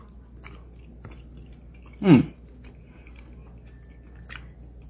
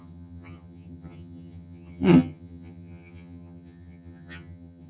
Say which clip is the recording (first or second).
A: first